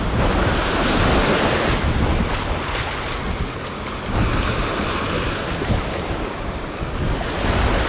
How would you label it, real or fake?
real